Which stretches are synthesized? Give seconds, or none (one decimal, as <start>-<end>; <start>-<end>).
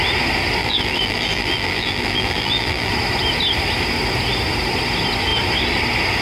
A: 0.6-2.9